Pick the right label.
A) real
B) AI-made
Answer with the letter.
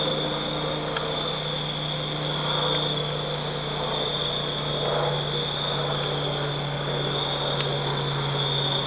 A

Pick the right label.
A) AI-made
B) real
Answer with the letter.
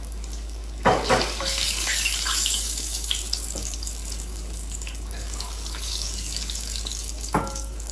A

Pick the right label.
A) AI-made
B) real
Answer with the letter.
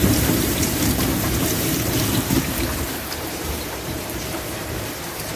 A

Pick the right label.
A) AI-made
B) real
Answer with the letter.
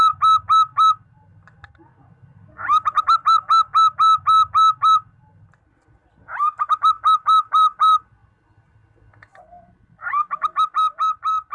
B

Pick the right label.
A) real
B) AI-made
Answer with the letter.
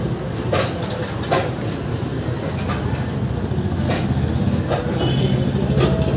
A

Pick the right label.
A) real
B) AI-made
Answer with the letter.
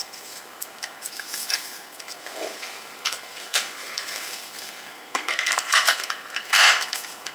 B